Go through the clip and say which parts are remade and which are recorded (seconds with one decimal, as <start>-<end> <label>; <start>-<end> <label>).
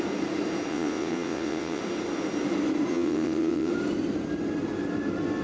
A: 0.0-0.7 recorded; 0.7-1.8 remade; 1.8-2.9 recorded; 2.9-3.7 remade; 3.7-5.4 recorded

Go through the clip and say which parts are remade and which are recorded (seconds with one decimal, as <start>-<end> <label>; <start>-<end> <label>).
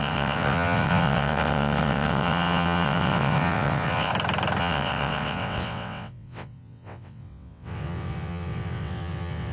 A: 0.0-4.1 remade; 4.1-4.6 recorded; 4.6-9.5 remade